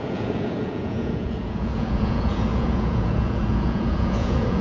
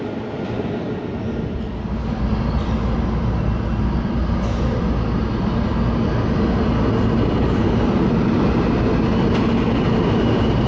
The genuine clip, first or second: second